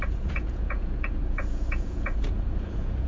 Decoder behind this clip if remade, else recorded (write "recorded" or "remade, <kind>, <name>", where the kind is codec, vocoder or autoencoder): remade, vocoder, Vocos